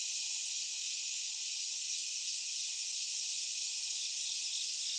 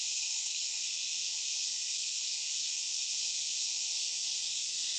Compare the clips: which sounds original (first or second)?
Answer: first